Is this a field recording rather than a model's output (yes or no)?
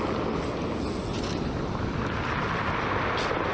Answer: yes